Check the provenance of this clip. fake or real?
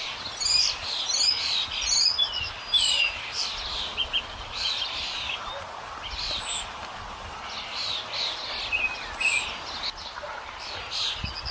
real